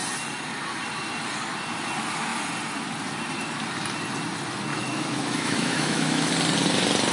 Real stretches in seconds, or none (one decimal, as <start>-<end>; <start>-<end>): 0.0-4.7; 6.3-7.1